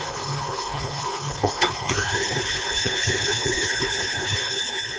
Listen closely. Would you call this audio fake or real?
fake